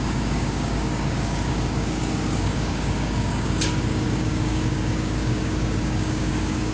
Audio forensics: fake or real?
fake